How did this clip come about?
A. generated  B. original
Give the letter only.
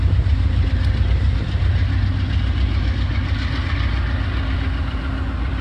B